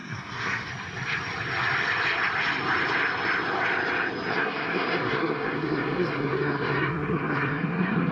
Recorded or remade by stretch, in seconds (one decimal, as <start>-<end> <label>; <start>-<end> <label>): 0.0-0.7 remade; 0.7-4.3 recorded; 4.3-8.1 remade